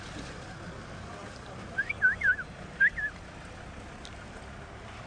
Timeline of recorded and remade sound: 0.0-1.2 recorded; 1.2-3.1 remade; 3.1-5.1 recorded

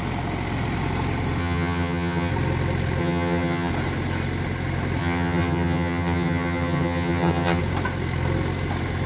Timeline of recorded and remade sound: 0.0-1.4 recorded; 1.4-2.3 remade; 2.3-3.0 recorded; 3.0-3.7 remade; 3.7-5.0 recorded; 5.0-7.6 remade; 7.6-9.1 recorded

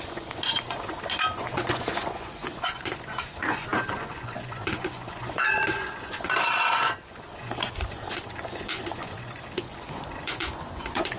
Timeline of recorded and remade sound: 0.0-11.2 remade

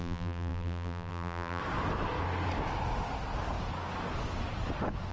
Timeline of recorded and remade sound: 0.0-1.6 remade; 1.6-5.1 recorded

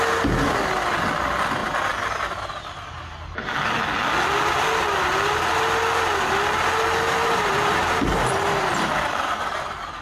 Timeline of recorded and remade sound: 0.0-7.2 recorded; 7.2-9.4 remade; 9.4-10.0 recorded

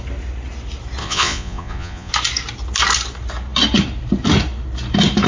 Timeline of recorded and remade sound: 0.0-1.0 recorded; 1.0-2.1 remade; 2.1-5.3 recorded

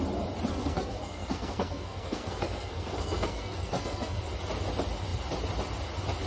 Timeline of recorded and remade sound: 0.0-0.5 recorded; 0.5-4.2 remade; 4.2-6.3 recorded

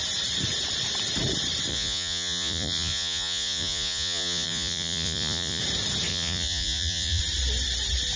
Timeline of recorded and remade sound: 0.0-1.7 recorded; 1.7-5.6 remade; 5.6-6.1 recorded; 6.1-7.2 remade; 7.2-8.2 recorded